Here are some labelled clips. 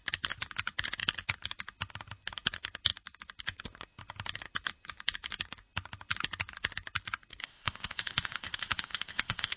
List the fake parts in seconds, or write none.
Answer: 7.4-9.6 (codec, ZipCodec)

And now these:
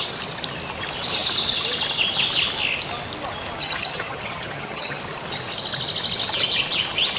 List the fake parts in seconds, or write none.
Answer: 3.6-5.0 (vocoder, HiFi-GAN)

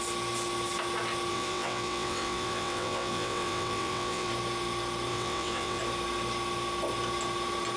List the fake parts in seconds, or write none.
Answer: 1.3-4.3 (vocoder, WaveNeXt); 5.1-5.8

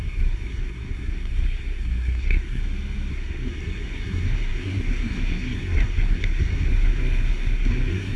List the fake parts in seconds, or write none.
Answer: 0.0-2.6 (codec, SNAC); 3.1-8.2